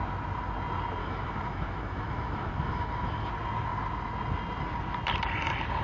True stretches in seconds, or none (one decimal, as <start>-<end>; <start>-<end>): 0.0-1.0; 3.3-5.8

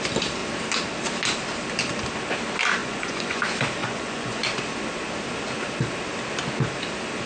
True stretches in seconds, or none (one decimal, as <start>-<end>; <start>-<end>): 0.0-2.8; 3.4-3.8; 4.4-7.3

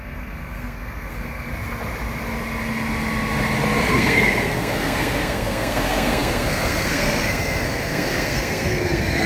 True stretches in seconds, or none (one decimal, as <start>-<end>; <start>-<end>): 1.5-3.9